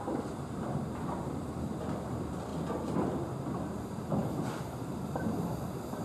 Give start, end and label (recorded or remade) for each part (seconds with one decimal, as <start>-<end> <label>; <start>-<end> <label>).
0.0-2.5 remade; 2.5-3.7 recorded; 3.7-6.0 remade

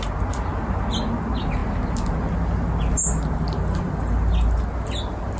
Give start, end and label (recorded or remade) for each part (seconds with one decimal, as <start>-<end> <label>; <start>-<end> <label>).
0.0-5.4 recorded

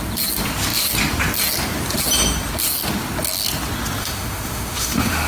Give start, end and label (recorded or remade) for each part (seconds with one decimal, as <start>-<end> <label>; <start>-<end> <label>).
0.0-4.0 recorded; 4.0-5.3 remade

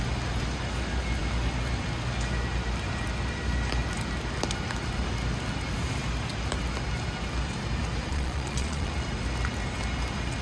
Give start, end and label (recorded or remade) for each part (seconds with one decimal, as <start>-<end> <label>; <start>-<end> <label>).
0.0-8.1 recorded; 8.1-8.9 remade; 8.9-10.4 recorded

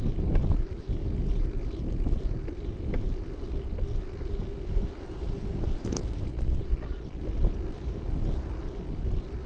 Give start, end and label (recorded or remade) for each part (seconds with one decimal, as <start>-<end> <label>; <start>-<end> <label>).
0.0-6.3 recorded; 6.3-7.2 remade; 7.2-9.5 recorded

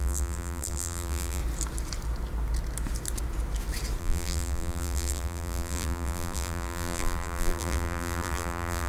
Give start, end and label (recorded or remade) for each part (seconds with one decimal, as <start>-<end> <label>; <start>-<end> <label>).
0.0-1.4 remade; 1.4-4.0 recorded; 4.0-8.9 remade

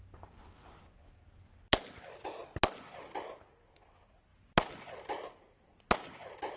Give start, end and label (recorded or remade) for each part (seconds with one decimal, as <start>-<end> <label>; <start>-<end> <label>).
0.0-6.6 recorded

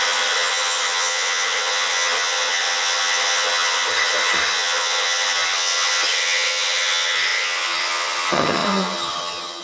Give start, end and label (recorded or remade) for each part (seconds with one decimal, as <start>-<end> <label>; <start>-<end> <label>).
0.0-9.6 remade